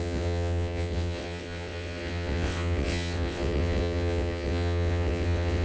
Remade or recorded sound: remade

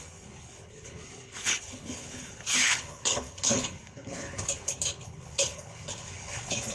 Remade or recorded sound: remade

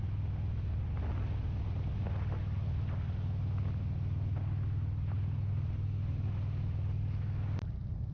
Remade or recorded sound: recorded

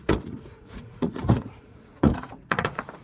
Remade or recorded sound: remade